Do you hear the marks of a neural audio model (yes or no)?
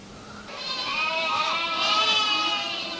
yes